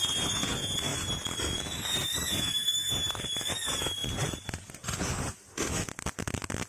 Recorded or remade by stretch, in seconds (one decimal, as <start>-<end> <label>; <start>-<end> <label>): 0.0-0.9 recorded; 0.9-3.5 remade; 3.5-4.0 recorded; 4.0-5.1 remade; 5.1-6.7 recorded